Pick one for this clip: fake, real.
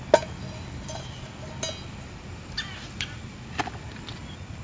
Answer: real